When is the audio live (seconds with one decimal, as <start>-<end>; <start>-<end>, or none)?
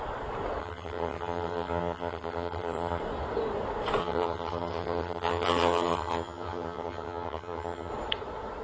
0.0-0.6; 3.0-4.0; 7.9-8.6